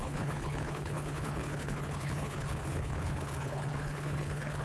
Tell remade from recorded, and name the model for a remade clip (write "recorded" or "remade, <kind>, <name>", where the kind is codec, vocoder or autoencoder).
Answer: remade, codec, HILCodec